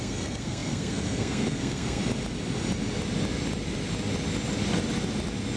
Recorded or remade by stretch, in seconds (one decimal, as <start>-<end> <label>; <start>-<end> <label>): 0.0-2.0 remade; 2.0-5.6 recorded